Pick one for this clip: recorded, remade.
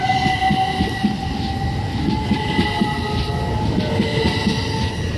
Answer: recorded